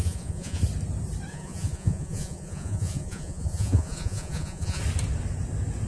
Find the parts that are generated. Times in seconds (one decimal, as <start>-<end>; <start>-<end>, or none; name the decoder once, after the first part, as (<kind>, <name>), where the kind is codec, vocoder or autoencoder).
0.0-0.6 (vocoder, Vocos); 1.3-4.8